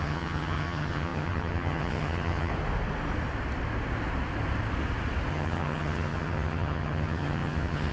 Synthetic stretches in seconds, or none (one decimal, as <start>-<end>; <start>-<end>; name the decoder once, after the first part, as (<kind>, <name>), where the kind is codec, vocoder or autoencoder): 0.0-2.5 (vocoder, HiFi-GAN); 5.3-7.9